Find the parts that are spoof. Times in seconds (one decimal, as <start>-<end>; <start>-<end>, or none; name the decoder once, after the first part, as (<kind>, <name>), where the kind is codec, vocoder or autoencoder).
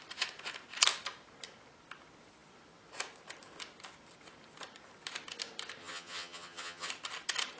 5.8-6.9 (vocoder, HiFi-GAN)